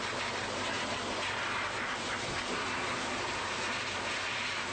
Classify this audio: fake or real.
real